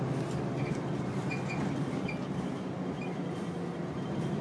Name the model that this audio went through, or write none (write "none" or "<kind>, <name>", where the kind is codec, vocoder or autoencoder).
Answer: none